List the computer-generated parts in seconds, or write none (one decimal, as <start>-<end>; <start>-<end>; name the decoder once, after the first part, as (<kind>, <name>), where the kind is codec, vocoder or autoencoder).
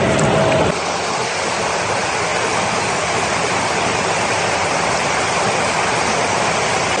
none